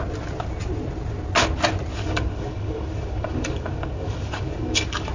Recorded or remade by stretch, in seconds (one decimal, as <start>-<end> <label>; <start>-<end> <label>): 0.0-1.9 recorded; 1.9-5.1 remade